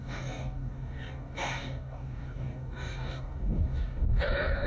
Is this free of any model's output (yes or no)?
no